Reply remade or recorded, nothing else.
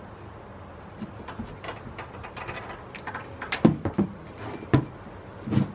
recorded